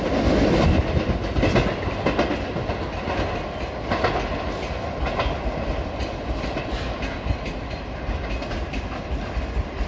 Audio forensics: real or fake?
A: real